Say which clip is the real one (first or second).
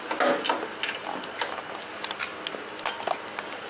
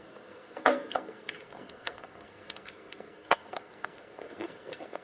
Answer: first